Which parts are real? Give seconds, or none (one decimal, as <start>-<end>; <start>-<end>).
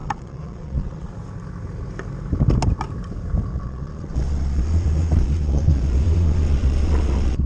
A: 1.1-3.5